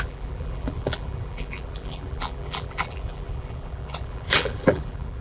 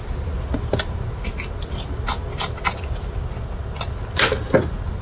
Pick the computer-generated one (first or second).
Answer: first